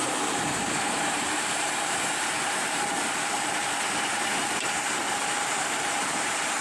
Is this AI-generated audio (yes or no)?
yes